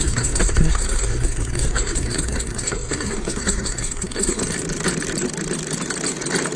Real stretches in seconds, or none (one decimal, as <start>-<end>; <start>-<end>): 4.4-6.6